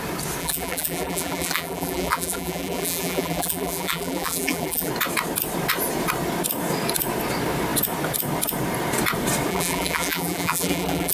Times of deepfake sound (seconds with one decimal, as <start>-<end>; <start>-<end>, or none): 0.4-4.9; 9.5-11.1